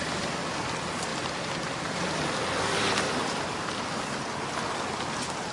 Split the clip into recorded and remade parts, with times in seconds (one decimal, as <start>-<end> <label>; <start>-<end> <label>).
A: 0.0-1.1 recorded; 1.1-4.4 remade; 4.4-5.5 recorded